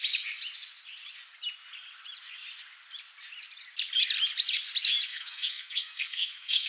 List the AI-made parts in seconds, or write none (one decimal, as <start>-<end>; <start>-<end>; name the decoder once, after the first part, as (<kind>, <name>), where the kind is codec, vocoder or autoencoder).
5.1-6.7 (codec, SNAC)